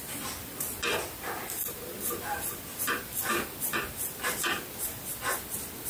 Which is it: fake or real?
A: real